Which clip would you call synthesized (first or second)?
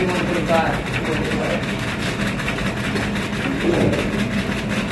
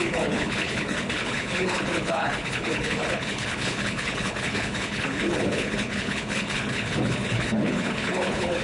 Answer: second